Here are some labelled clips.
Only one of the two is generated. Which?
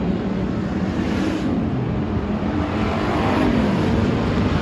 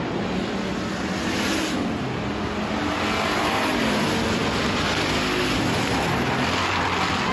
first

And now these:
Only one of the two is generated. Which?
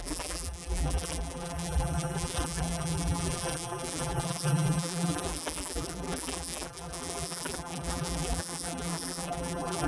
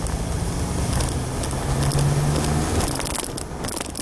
first